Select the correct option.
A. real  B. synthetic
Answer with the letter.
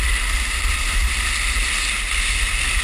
A